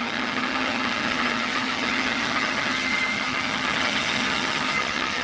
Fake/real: fake